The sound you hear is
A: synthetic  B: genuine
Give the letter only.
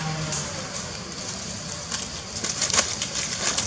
B